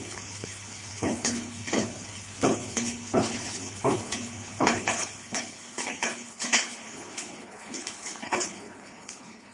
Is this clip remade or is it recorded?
remade